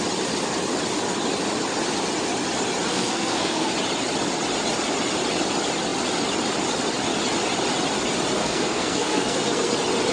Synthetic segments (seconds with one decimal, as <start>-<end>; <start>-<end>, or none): 2.9-3.7; 8.4-9.7